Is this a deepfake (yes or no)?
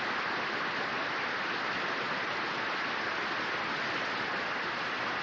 no